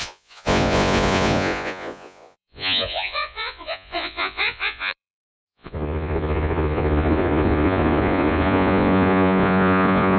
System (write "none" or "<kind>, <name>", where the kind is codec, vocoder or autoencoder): vocoder, Vocos